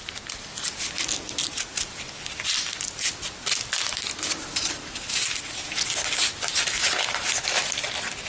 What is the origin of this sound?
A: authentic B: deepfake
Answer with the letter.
A